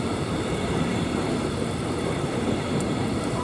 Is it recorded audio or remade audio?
remade